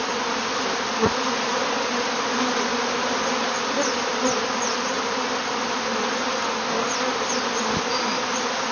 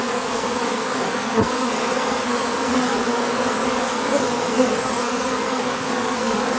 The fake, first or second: second